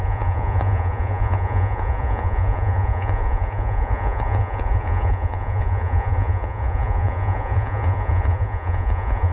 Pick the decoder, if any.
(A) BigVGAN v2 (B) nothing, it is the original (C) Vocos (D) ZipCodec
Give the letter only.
C